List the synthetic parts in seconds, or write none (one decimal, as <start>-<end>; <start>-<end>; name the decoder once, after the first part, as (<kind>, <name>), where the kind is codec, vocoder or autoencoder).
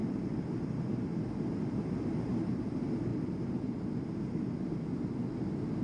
none